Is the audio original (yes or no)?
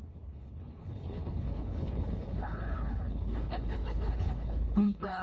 no